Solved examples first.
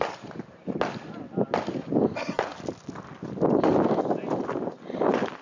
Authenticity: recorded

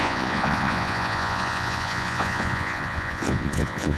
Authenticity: remade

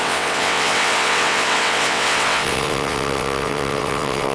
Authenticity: remade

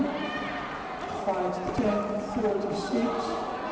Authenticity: recorded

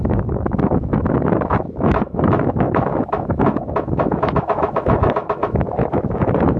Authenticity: remade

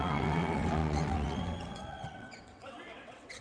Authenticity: remade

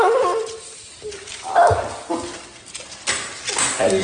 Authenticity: recorded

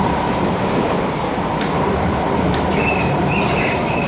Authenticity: remade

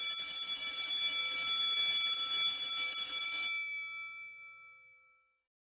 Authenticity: recorded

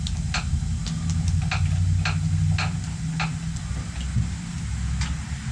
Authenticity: recorded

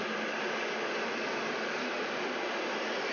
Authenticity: recorded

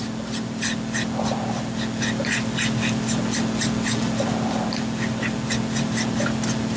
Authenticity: recorded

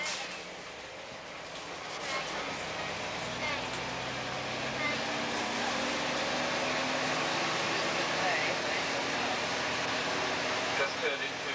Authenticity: recorded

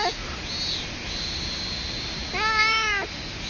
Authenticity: recorded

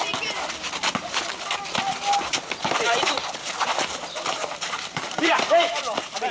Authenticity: remade